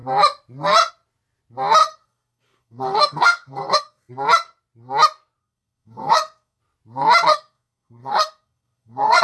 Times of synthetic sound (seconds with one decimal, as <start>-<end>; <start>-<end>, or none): 1.8-4.1; 5.4-6.6; 7.3-9.2